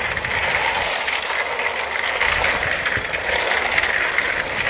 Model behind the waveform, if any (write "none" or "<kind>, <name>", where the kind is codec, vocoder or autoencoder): none